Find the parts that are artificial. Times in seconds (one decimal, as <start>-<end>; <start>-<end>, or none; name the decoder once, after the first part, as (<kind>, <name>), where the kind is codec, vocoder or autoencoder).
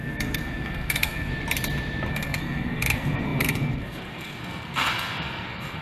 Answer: 0.0-1.3 (codec, SNAC); 2.1-5.8